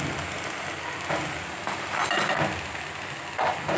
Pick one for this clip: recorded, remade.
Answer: recorded